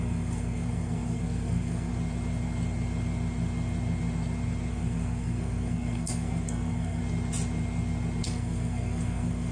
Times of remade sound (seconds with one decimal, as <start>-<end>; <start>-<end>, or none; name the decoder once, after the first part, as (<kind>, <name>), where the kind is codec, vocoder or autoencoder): 0.0-1.9 (codec, SNAC); 4.7-7.0; 8.2-9.5